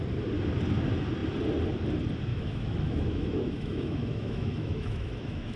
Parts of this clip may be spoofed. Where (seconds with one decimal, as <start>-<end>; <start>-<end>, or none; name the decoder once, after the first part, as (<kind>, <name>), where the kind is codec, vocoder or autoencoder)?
2.3-5.6 (autoencoder, DAC-VAE)